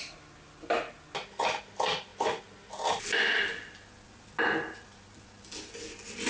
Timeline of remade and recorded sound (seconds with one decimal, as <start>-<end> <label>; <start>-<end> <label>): 0.0-6.3 recorded

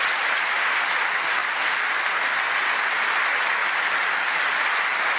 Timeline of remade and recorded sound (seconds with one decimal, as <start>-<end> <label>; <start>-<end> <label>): 0.0-1.4 recorded; 1.4-3.0 remade; 3.0-3.6 recorded; 3.6-4.7 remade; 4.7-5.2 recorded

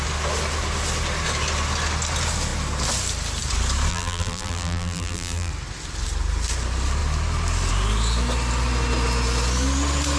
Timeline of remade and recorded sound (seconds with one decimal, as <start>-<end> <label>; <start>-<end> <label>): 0.0-3.9 recorded; 3.9-5.5 remade; 5.5-10.2 recorded

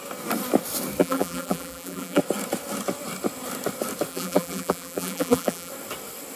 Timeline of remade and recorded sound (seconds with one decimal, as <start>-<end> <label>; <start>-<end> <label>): 0.0-1.0 recorded; 1.0-2.2 remade; 2.2-4.1 recorded; 4.1-5.7 remade; 5.7-6.4 recorded

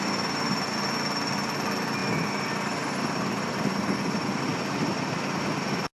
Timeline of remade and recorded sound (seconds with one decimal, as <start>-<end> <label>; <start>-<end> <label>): 0.0-2.0 recorded; 2.0-3.8 remade; 3.8-6.0 recorded

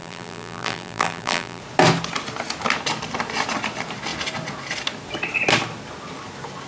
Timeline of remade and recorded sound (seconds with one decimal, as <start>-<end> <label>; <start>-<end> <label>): 0.0-1.6 remade; 1.6-6.7 recorded

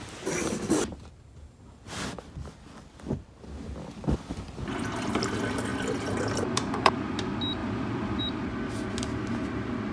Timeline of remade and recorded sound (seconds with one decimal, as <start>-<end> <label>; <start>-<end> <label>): 0.0-5.7 recorded; 5.7-6.9 remade; 6.9-7.6 recorded; 7.6-8.2 remade; 8.2-9.9 recorded